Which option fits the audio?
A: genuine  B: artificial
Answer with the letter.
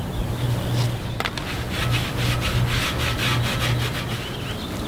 A